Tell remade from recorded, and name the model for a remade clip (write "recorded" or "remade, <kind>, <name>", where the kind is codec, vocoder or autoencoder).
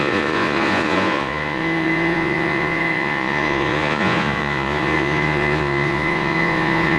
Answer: remade, vocoder, Vocos